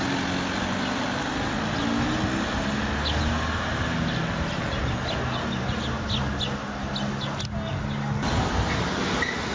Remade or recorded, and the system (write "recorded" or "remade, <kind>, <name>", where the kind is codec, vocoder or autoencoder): recorded